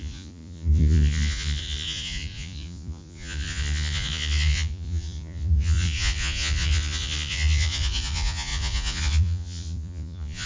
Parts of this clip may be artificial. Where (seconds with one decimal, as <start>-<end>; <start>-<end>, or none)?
0.0-10.5